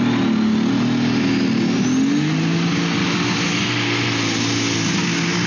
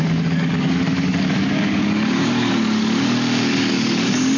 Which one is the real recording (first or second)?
first